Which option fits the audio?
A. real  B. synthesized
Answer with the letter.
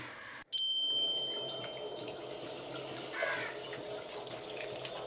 A